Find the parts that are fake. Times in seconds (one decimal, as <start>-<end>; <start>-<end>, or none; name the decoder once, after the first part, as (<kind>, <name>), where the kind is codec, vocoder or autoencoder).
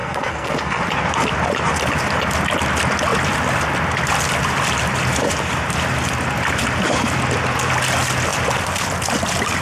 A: 0.0-0.8 (codec, SNAC)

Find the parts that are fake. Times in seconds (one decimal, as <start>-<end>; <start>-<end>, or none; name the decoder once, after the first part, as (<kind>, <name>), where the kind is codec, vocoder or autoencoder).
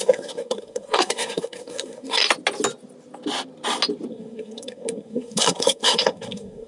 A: 0.0-2.2 (codec, SNAC); 4.1-6.7